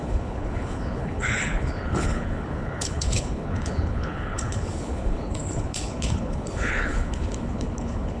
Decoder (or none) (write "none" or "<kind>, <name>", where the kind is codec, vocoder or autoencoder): codec, HILCodec